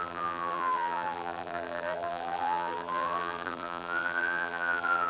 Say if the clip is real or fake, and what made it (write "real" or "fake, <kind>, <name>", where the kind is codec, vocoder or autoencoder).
fake, vocoder, BigVGAN v2